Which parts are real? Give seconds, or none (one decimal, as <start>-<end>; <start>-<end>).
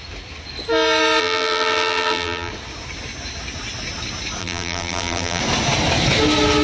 0.0-1.2; 2.5-4.4; 5.4-6.6